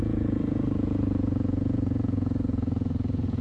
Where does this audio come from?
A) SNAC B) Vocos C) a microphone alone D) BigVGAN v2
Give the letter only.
B